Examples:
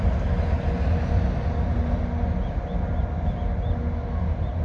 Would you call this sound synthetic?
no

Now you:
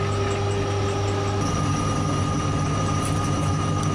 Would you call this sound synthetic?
no